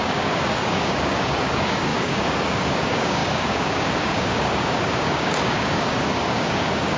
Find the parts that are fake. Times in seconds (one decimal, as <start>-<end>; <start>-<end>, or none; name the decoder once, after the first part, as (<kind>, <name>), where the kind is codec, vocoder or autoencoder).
0.0-7.0 (codec, DAC)